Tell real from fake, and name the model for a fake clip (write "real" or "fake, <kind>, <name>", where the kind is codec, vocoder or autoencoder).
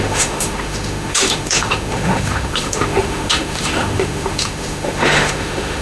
fake, autoencoder, DAC-VAE